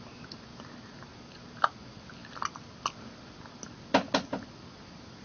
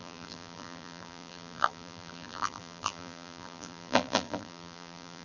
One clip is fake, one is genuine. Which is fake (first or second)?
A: second